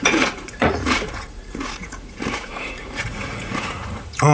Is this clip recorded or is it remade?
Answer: remade